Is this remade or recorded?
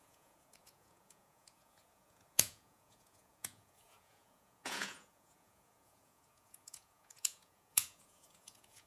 remade